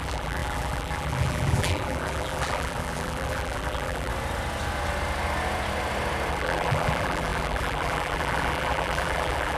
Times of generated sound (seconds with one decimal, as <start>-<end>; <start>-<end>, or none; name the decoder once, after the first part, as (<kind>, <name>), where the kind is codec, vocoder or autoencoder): 0.0-4.1 (vocoder, BigVGAN v2); 6.3-9.6